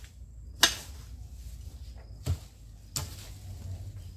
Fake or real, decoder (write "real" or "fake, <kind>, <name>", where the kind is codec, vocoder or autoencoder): real